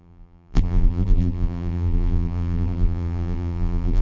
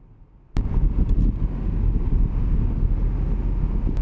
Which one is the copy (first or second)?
first